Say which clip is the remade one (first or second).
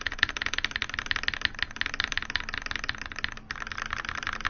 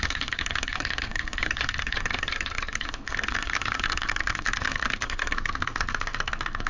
second